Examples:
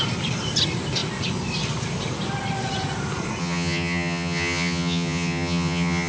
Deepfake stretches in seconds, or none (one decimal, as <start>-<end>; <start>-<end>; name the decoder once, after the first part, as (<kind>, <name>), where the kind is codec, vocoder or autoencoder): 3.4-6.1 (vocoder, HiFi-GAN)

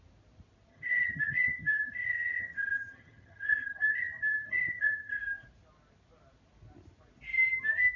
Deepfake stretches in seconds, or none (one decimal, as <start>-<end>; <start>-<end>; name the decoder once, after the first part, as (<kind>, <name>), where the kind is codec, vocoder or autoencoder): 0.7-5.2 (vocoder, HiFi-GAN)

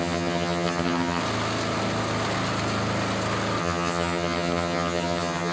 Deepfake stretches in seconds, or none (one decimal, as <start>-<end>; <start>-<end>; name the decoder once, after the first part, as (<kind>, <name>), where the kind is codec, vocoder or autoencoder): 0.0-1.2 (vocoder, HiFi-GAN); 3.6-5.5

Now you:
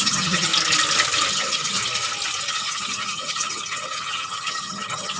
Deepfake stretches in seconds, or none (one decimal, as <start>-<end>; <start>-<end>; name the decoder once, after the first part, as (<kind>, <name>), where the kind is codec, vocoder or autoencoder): 0.0-0.5 (vocoder, HiFi-GAN); 1.3-1.8; 2.5-5.2

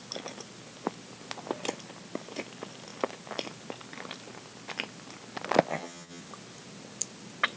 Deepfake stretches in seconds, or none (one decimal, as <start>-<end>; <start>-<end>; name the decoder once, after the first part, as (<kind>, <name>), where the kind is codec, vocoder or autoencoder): 5.7-6.2 (vocoder, HiFi-GAN)

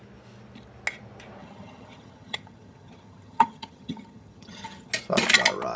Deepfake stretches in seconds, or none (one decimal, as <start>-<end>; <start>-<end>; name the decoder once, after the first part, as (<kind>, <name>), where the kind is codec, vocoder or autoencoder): 1.4-4.9 (vocoder, HiFi-GAN)